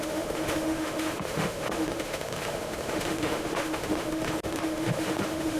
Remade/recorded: remade